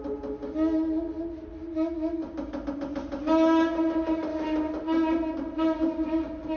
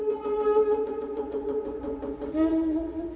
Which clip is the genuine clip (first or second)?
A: first